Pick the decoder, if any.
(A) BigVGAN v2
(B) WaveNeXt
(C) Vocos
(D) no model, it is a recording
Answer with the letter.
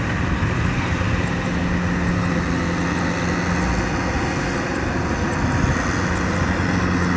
D